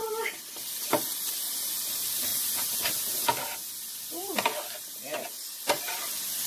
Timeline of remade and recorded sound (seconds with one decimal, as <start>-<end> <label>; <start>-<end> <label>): 0.0-0.5 remade; 0.5-4.2 recorded; 4.2-5.4 remade; 5.4-6.5 recorded